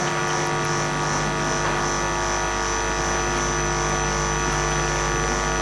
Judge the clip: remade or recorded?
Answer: recorded